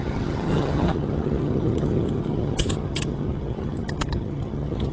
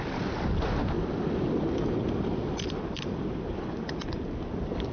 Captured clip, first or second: second